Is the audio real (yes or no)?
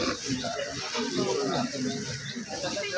yes